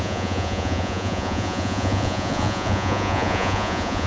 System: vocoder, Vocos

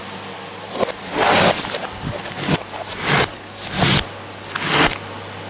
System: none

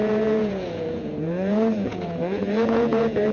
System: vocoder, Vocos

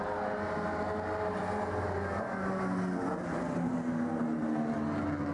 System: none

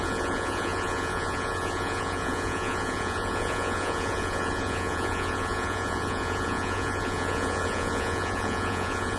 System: vocoder, Vocos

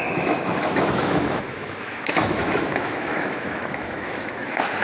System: autoencoder, DAC-VAE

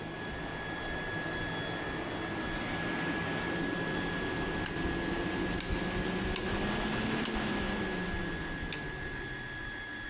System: none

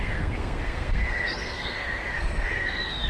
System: codec, SNAC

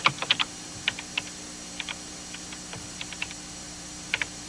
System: vocoder, BigVGAN v2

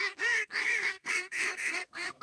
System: codec, SNAC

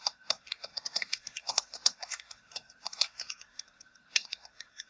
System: codec, SNAC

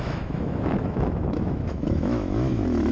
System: autoencoder, DAC-VAE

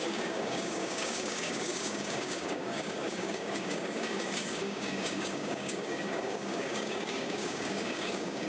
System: codec, DAC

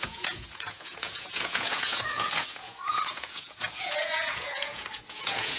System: vocoder, Vocos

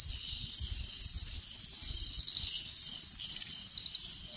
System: none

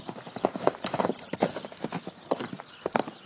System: vocoder, BigVGAN v2